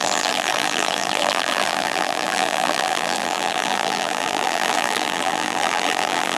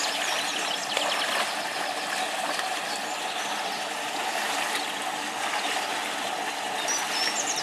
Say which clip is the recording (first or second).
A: second